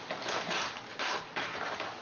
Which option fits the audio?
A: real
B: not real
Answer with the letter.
A